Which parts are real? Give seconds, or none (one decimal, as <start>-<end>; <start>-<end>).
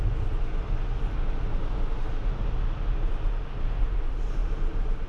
0.0-4.4